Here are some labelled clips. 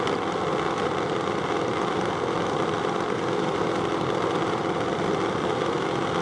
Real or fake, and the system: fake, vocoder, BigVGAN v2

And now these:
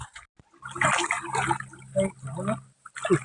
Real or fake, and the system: real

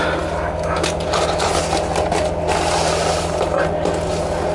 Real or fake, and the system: real